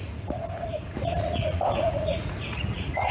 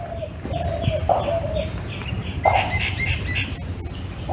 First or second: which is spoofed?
first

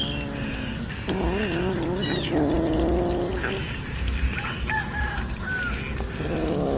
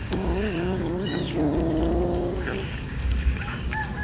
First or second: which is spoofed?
second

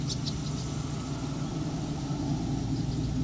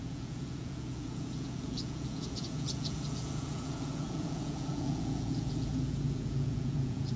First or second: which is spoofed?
second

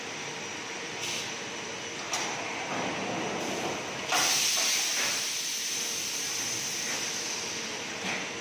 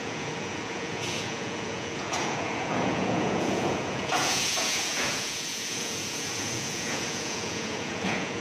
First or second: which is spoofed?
second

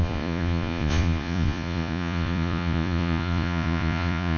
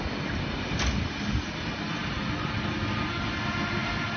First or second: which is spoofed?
first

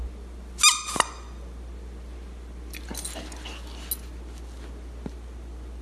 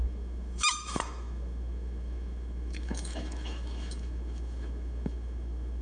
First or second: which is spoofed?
second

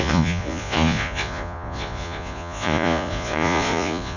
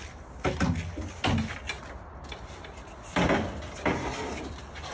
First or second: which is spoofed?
first